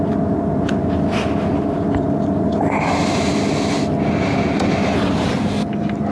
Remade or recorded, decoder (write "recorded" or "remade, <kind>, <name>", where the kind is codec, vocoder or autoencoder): recorded